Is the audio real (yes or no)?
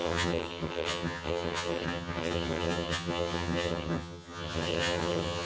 no